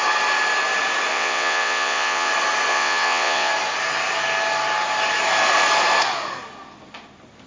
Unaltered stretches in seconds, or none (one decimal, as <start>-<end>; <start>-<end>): 0.0-1.1; 2.3-2.7; 3.5-7.5